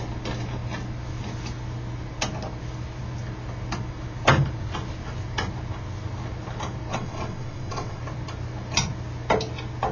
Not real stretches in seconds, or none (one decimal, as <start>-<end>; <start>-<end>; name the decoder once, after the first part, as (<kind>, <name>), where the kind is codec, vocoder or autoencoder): 6.9-8.0 (vocoder, WaveNeXt)